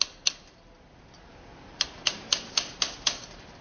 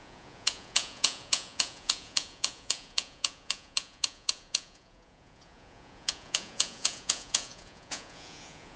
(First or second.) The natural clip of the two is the first